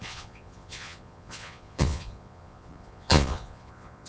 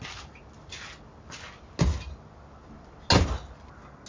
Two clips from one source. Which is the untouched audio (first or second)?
second